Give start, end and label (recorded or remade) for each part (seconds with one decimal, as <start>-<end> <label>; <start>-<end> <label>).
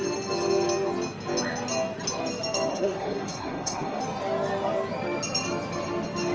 0.0-2.7 recorded; 2.7-4.0 remade; 4.0-6.3 recorded